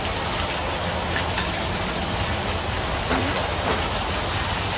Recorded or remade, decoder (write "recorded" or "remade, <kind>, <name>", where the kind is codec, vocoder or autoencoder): recorded